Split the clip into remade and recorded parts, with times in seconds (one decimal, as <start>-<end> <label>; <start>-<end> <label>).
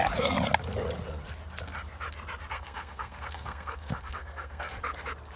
0.0-2.5 recorded; 2.5-4.7 remade; 4.7-5.4 recorded